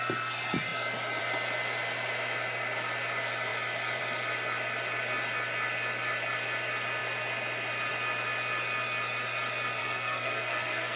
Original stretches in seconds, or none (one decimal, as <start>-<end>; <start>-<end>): 0.0-9.8